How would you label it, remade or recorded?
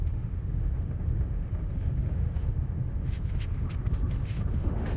remade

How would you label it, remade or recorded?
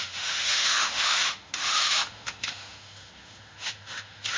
remade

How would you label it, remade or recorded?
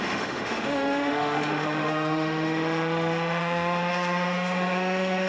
remade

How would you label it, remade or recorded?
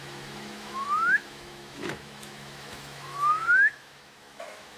remade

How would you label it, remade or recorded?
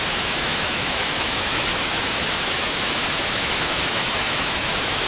remade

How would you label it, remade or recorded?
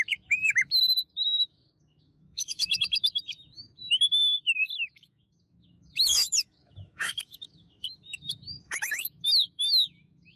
remade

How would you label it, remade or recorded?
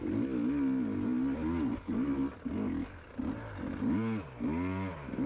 recorded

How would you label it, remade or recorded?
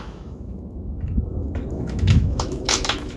remade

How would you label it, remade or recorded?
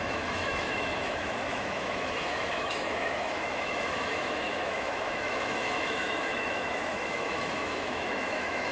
remade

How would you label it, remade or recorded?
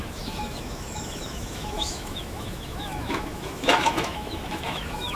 remade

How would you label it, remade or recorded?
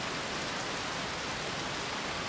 recorded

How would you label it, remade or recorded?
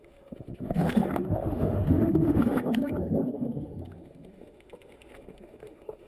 remade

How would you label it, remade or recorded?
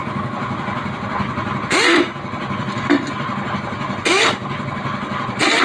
recorded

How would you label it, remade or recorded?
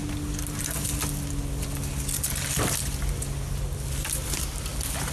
recorded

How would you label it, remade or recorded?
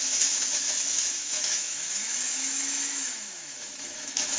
remade